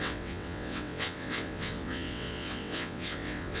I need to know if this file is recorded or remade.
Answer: remade